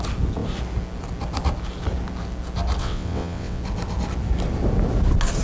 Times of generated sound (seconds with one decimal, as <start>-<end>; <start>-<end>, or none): 2.8-3.6